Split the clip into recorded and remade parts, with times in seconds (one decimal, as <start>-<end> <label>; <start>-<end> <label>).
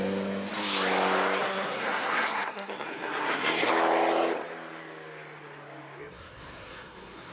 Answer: 0.0-1.4 recorded; 1.4-3.7 remade; 3.7-6.0 recorded; 6.0-7.3 remade